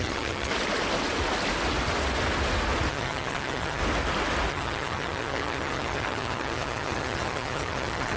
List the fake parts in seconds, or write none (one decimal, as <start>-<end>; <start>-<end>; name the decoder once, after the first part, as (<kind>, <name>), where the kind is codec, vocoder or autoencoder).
0.0-0.5 (vocoder, HiFi-GAN); 2.9-3.8; 4.5-8.2